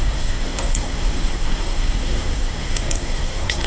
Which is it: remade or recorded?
remade